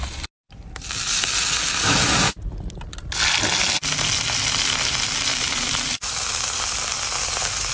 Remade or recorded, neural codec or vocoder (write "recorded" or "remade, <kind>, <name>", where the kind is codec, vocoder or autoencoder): recorded